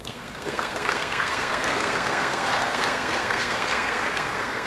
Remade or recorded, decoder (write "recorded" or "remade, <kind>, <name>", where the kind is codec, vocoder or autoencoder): remade, codec, SNAC